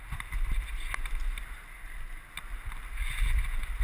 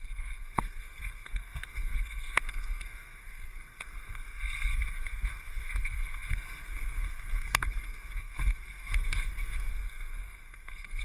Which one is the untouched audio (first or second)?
first